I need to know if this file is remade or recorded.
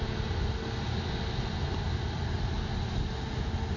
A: recorded